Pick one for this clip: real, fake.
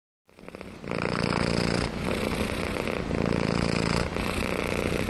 real